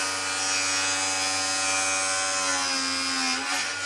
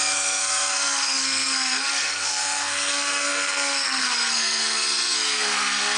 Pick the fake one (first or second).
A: second